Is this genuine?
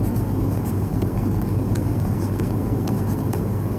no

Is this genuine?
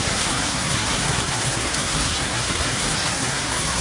no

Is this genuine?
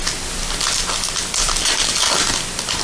yes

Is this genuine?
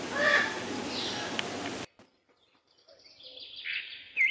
yes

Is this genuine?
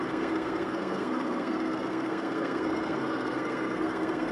no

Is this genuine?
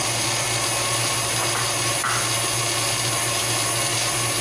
yes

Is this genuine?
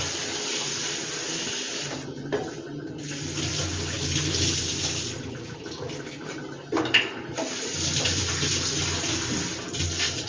yes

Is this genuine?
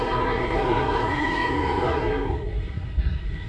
no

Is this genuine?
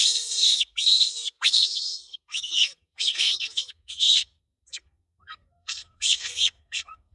no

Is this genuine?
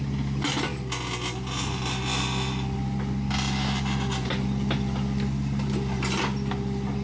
yes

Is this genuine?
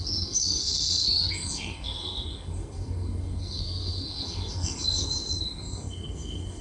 no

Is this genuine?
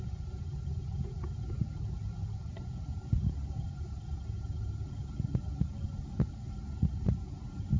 yes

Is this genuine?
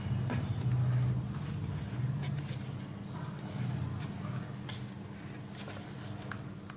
yes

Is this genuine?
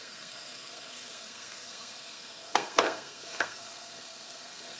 no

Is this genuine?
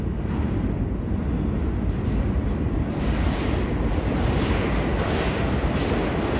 yes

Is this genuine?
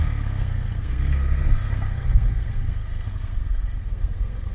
no